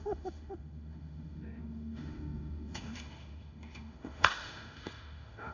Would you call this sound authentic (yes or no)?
no